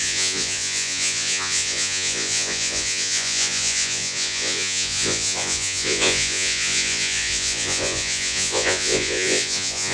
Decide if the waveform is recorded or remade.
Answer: remade